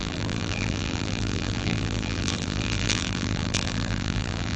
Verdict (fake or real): fake